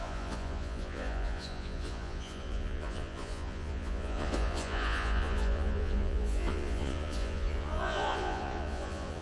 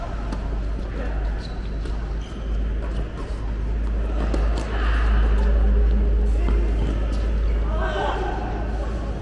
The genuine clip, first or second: second